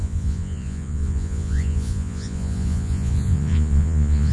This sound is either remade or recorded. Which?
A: remade